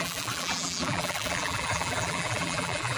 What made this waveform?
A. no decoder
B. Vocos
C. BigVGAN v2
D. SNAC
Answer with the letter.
C